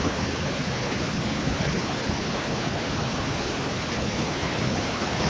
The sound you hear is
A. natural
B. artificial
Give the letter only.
B